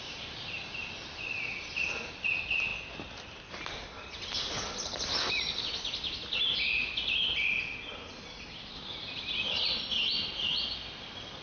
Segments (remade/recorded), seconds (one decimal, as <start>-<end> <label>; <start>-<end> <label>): 0.0-11.4 recorded